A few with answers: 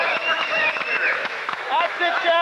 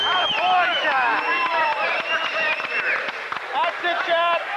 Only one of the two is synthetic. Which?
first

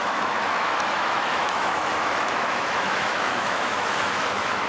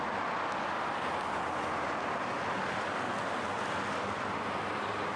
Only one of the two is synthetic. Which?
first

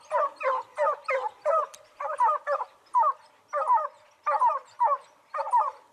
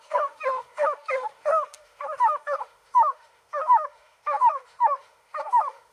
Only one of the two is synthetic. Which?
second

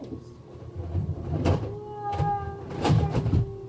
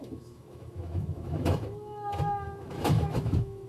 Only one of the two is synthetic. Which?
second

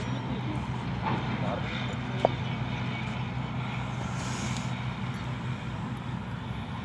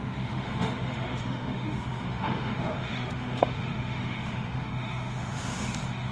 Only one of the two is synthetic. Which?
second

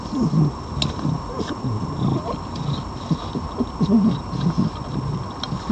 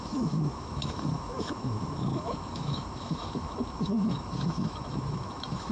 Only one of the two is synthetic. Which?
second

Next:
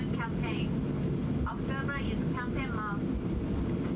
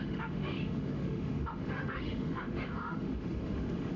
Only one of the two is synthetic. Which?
second